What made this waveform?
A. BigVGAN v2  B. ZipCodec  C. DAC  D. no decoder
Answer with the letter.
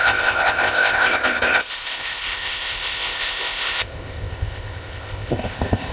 B